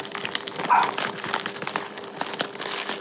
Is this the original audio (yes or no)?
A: yes